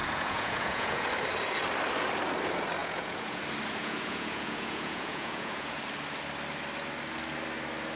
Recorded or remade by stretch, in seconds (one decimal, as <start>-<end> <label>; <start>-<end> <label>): 0.0-1.0 remade; 1.0-2.8 recorded; 2.8-3.4 remade; 3.4-3.8 recorded; 3.8-5.8 remade; 5.8-8.0 recorded